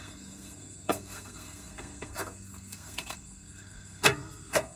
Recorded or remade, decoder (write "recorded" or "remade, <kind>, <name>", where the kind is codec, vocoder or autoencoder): remade, codec, SNAC